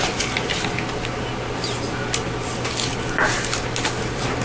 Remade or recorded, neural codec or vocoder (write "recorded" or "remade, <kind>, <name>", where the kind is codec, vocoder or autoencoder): recorded